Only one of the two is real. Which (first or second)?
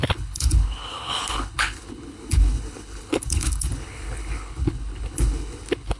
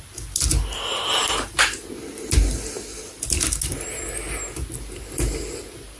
second